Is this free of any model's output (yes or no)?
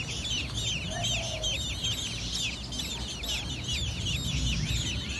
yes